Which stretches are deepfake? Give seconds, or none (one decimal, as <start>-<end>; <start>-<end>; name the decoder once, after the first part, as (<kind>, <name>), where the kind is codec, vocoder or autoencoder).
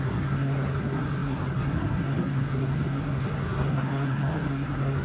0.0-5.0 (codec, SNAC)